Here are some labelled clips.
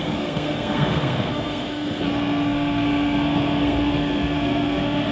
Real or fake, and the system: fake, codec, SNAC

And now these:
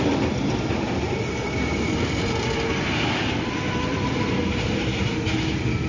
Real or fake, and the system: real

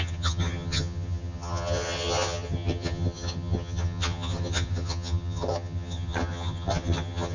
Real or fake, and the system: fake, vocoder, HiFi-GAN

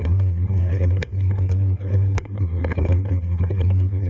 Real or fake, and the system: fake, codec, SNAC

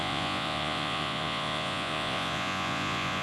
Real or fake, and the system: fake, vocoder, Vocos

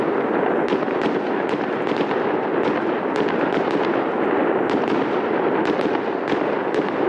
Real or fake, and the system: real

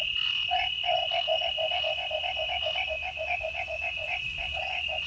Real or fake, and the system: fake, vocoder, Vocos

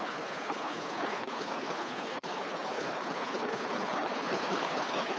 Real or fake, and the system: fake, codec, HILCodec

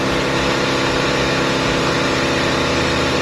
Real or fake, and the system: real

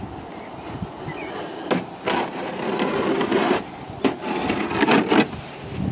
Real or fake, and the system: real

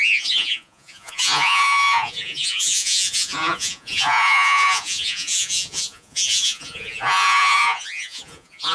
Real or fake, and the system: fake, vocoder, Vocos